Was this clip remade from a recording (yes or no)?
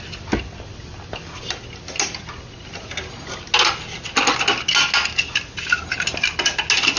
no